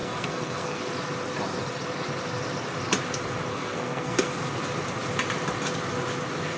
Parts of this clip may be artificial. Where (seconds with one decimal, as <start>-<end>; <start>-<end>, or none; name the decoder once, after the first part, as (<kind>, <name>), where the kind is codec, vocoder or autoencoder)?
0.0-0.8 (codec, SNAC); 3.5-4.3